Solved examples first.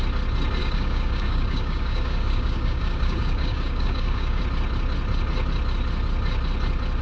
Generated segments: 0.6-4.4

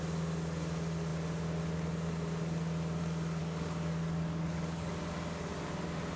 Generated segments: 3.4-4.9

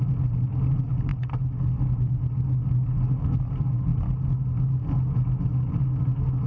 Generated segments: none